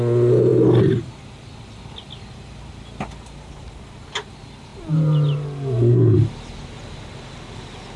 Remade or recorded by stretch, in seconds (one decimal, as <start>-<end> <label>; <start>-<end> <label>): 0.0-8.0 recorded